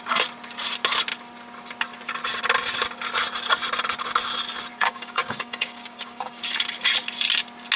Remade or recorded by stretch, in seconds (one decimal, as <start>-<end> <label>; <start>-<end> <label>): 0.0-4.7 recorded; 4.7-6.4 remade; 6.4-7.8 recorded

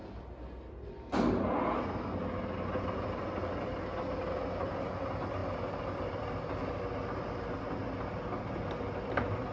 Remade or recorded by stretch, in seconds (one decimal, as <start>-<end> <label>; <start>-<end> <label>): 0.0-9.5 recorded

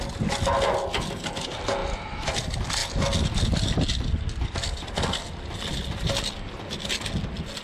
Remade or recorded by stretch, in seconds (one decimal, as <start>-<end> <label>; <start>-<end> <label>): 0.0-1.8 recorded; 1.8-2.3 remade; 2.3-7.6 recorded

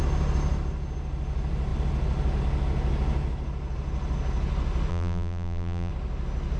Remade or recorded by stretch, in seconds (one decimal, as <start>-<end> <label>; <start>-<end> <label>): 0.0-4.9 recorded; 4.9-5.9 remade; 5.9-6.6 recorded

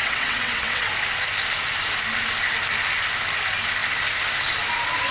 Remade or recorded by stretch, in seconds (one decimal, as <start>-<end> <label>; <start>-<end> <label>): 0.0-0.9 remade; 0.9-5.1 recorded